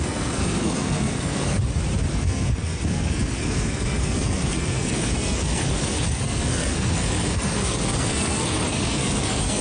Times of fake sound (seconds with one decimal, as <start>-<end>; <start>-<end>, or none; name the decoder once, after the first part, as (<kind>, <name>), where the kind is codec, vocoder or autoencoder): 0.0-1.6 (codec, SNAC); 2.1-9.6